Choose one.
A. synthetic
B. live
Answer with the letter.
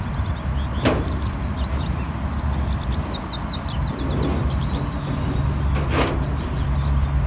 B